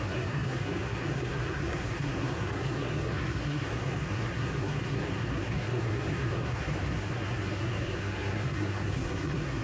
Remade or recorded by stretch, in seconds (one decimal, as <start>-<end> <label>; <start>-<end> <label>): 0.0-9.6 remade